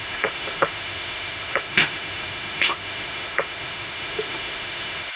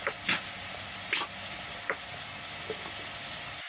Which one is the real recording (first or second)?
second